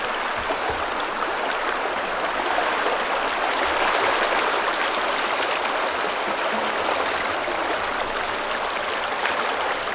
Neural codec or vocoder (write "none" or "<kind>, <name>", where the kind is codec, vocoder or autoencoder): none